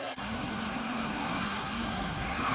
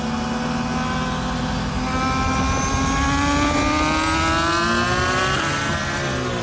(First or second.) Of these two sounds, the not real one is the first